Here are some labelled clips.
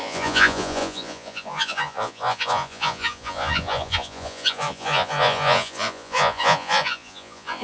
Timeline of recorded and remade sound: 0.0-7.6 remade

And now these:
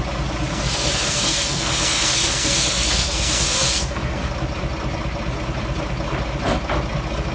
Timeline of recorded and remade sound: 0.0-0.5 recorded; 0.5-4.3 remade; 4.3-7.3 recorded

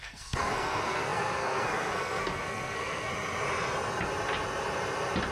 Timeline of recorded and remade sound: 0.0-3.1 remade; 3.1-5.3 recorded

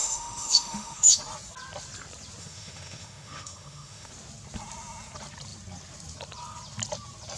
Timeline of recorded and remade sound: 0.0-1.2 remade; 1.2-2.4 recorded; 2.4-4.1 remade; 4.1-7.4 recorded

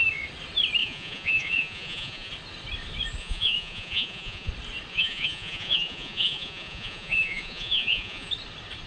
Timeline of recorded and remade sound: 0.0-0.8 recorded; 0.8-2.3 remade; 2.3-3.2 recorded; 3.2-4.5 remade; 4.5-4.9 recorded; 4.9-8.3 remade; 8.3-8.9 recorded

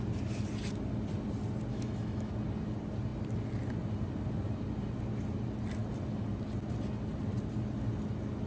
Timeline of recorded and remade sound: 0.0-1.7 recorded; 1.7-2.3 remade; 2.3-8.5 recorded

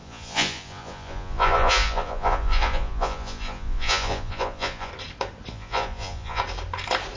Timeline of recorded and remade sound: 0.0-4.9 remade; 4.9-5.5 recorded; 5.5-6.4 remade; 6.4-7.2 recorded